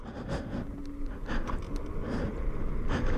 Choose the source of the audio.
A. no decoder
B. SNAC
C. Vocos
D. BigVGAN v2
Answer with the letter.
A